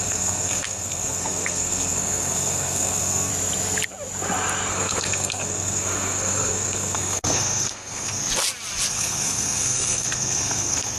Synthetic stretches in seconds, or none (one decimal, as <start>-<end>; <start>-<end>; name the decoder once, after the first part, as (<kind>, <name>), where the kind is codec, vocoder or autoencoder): 0.0-3.3 (codec, SNAC); 4.7-8.2; 8.9-11.0